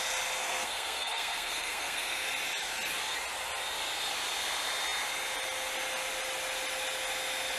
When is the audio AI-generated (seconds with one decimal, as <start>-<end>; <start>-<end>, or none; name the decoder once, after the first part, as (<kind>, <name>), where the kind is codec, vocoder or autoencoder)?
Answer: 0.4-2.3 (codec, SNAC)

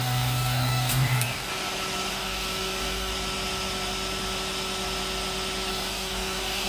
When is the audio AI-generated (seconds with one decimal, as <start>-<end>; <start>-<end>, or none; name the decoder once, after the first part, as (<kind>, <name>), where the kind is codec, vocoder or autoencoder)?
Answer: 0.0-1.5 (codec, DAC); 2.1-3.1; 5.7-6.7

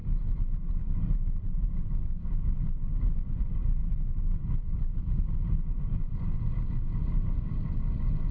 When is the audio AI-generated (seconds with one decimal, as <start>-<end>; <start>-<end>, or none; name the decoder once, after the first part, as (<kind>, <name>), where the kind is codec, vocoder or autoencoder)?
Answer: 0.0-1.9 (vocoder, BigVGAN v2); 3.8-7.7

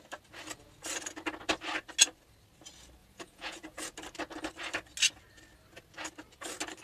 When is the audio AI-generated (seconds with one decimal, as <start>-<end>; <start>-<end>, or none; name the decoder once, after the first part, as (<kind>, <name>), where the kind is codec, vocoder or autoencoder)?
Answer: 3.0-3.8 (vocoder, Vocos)

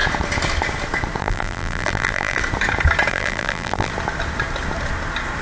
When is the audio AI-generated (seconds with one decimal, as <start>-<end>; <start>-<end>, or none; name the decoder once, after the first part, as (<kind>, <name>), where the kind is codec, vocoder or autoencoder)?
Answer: 1.2-2.4 (vocoder, BigVGAN v2); 3.1-3.9

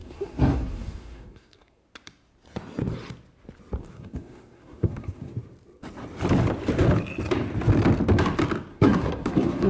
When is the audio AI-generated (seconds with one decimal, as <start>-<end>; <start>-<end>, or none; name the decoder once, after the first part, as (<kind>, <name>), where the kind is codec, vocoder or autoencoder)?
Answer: 0.0-1.8 (codec, SNAC); 3.8-5.3; 8.7-9.7

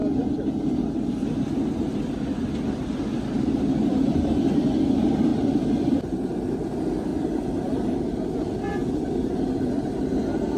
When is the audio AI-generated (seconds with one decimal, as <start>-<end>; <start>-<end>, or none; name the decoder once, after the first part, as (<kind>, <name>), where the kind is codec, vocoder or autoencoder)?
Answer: 3.6-10.6 (vocoder, BigVGAN v2)